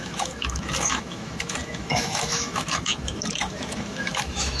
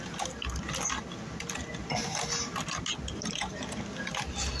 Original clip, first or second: second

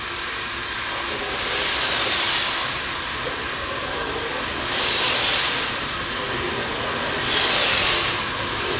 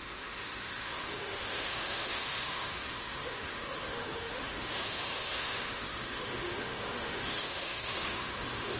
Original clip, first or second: first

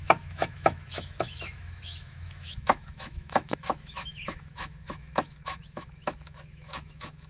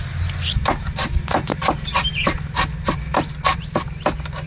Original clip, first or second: second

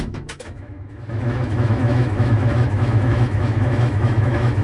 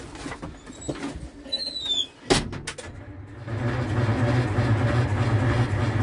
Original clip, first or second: second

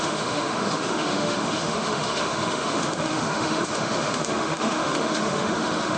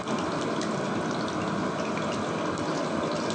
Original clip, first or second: second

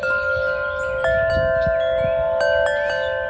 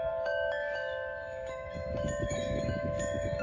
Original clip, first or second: first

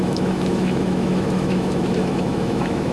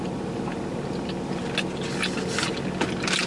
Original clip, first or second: second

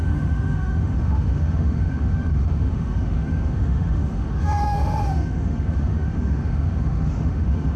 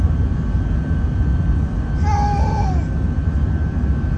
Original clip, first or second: second